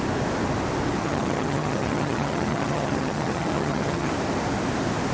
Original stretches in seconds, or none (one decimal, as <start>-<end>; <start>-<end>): 0.0-1.0; 4.1-5.1